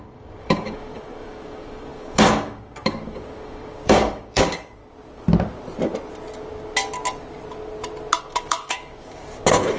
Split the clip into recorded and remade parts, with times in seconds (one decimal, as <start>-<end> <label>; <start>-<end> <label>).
0.0-4.8 remade; 4.8-8.2 recorded; 8.2-9.8 remade